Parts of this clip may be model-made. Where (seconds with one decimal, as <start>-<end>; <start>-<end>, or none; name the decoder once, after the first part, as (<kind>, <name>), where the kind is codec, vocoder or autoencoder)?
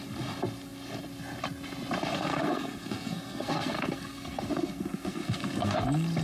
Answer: 2.1-5.8 (codec, SNAC)